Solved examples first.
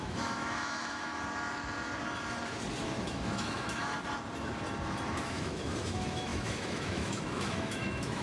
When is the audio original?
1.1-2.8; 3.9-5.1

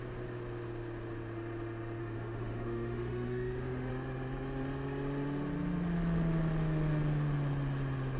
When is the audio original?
0.0-2.0; 3.9-8.2

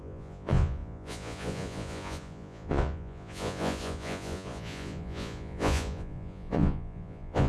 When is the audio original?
none

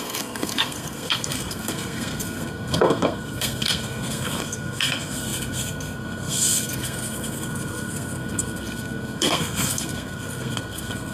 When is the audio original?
none